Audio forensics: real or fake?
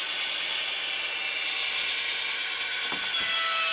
real